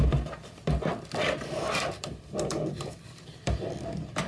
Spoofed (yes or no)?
yes